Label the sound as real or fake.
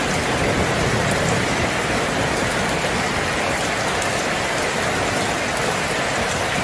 real